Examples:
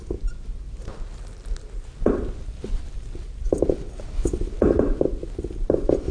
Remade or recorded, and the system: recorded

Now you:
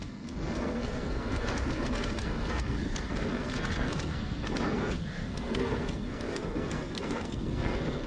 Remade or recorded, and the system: remade, codec, SNAC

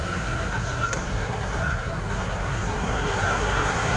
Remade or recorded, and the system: remade, codec, SNAC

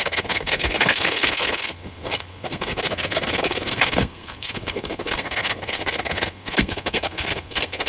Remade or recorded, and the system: remade, codec, SNAC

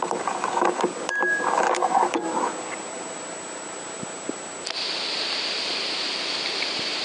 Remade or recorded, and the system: recorded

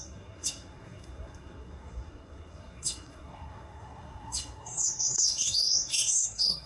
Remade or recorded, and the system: remade, codec, SNAC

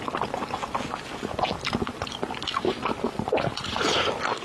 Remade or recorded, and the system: recorded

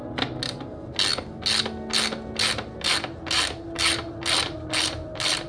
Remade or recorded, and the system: recorded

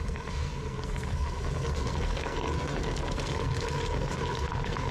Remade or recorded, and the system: remade, codec, SNAC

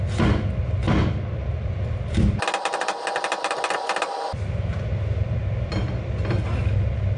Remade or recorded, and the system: recorded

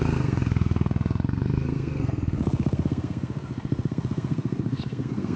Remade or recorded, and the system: remade, codec, SNAC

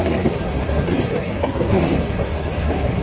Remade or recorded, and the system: remade, codec, SNAC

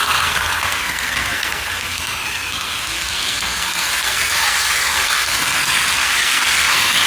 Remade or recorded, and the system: remade, codec, SNAC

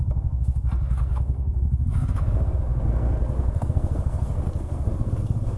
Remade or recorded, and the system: remade, codec, SNAC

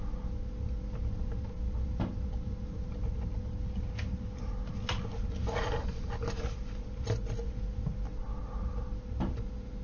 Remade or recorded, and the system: recorded